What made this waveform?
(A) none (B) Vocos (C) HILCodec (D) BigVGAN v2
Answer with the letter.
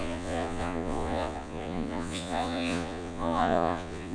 B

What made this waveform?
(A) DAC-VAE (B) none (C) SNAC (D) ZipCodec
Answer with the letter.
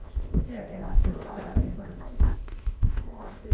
D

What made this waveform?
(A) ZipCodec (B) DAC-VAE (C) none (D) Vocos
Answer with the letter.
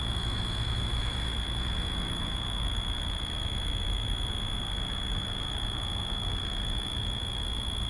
B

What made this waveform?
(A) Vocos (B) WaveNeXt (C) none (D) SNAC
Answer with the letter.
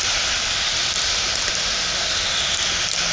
C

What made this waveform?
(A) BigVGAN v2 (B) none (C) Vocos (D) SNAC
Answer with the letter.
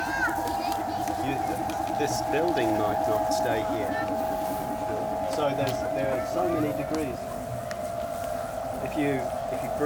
B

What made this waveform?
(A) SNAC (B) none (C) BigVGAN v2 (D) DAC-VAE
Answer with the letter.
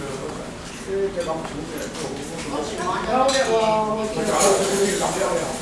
B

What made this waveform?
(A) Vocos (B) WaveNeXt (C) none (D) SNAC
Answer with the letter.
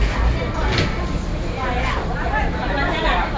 C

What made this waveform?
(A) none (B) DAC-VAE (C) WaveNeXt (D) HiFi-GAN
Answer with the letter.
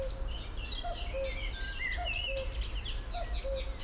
A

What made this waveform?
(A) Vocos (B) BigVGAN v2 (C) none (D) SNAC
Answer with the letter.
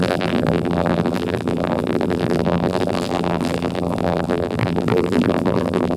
B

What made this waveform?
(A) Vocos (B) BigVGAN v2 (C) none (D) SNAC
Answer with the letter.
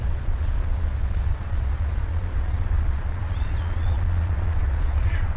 A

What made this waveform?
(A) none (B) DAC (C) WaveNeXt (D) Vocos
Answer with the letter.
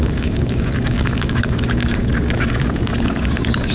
B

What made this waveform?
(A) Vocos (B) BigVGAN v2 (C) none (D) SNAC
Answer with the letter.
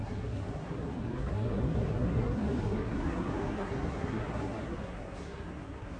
D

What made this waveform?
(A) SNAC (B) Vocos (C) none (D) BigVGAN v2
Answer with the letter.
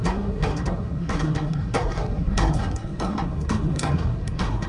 A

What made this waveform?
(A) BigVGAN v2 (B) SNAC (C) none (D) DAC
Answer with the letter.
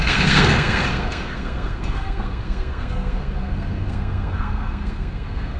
B